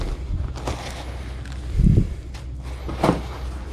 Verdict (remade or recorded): recorded